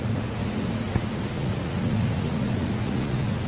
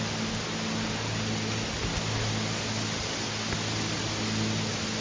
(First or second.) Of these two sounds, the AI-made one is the first